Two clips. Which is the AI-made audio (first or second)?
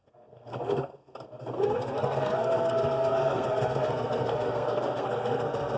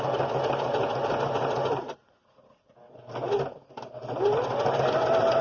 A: first